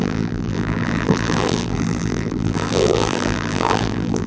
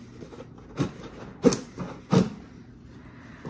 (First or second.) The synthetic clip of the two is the first